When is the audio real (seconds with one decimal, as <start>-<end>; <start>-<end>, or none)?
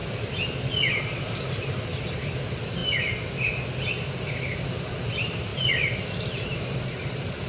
0.0-0.9; 2.8-4.0